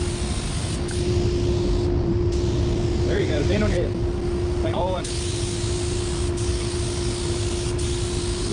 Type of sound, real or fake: real